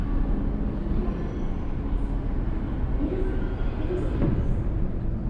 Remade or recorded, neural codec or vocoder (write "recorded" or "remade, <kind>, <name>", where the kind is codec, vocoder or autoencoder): recorded